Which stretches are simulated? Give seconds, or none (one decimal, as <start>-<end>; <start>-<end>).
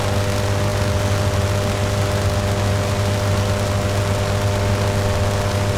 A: none